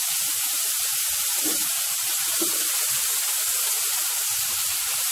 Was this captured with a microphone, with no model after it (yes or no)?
no